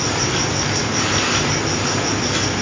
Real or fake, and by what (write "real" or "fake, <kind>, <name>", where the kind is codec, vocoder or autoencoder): real